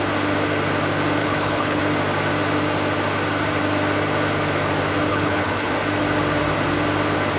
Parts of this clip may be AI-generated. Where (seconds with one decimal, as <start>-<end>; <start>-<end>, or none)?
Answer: 1.2-1.8; 5.1-5.7